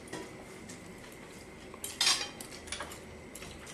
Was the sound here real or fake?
real